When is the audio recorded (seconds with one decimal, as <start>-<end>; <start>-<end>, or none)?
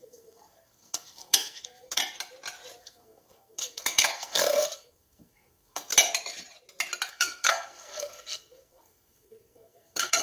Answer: 2.0-2.8; 5.9-7.1